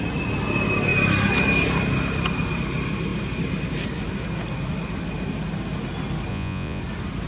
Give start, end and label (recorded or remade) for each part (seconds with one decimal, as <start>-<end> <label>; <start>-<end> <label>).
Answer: 0.0-6.3 recorded; 6.3-6.8 remade; 6.8-7.3 recorded